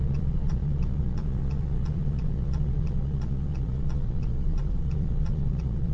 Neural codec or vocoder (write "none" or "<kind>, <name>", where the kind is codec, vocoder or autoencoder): vocoder, Vocos